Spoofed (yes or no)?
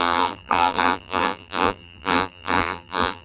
yes